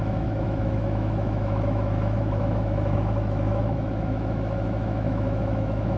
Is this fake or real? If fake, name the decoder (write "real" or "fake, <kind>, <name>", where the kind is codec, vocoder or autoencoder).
fake, autoencoder, DAC-VAE